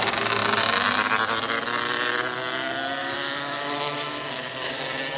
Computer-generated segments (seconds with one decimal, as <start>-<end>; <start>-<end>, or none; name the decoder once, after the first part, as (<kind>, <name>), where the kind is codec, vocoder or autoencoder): 3.0-4.8 (autoencoder, DAC-VAE)